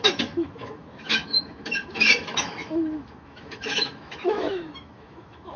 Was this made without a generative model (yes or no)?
no